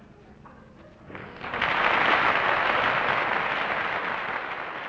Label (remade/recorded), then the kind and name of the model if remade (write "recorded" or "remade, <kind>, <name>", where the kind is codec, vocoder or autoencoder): recorded